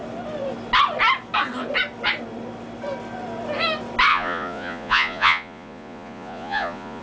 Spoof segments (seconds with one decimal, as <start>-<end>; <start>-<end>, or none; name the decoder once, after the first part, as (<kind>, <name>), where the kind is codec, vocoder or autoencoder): 4.1-7.0 (vocoder, Vocos)